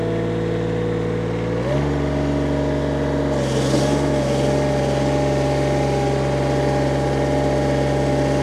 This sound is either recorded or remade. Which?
recorded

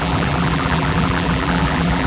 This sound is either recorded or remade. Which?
remade